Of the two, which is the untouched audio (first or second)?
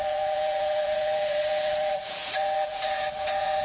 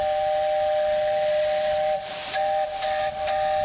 second